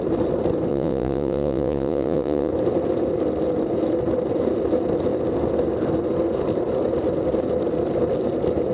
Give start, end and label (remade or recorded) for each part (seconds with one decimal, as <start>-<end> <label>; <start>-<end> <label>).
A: 0.0-0.7 recorded; 0.7-2.5 remade; 2.5-8.7 recorded